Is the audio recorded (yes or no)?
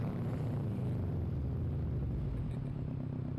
yes